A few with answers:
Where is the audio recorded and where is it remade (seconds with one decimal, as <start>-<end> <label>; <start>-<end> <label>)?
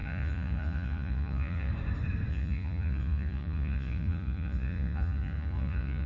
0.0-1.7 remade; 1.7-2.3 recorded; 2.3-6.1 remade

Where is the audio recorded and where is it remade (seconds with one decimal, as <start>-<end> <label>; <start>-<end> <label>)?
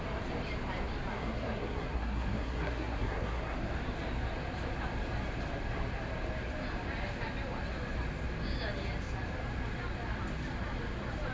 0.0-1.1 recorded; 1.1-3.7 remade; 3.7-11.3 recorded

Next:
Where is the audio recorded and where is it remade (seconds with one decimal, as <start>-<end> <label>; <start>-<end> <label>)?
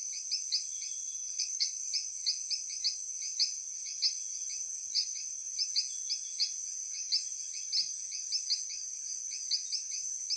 0.0-1.0 recorded; 1.0-1.8 remade; 1.8-10.4 recorded